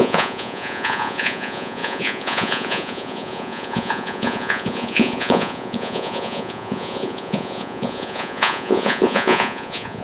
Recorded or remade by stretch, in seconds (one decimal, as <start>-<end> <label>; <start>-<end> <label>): 0.0-10.0 remade